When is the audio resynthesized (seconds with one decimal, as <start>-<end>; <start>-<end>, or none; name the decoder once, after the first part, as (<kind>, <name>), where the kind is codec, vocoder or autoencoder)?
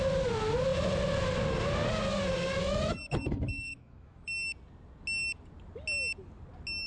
2.6-4.3 (autoencoder, DAC-VAE)